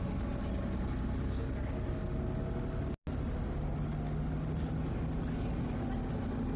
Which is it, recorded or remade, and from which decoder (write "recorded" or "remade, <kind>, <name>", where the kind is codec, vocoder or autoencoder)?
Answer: recorded